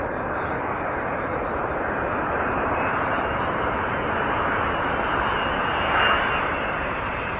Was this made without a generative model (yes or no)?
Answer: yes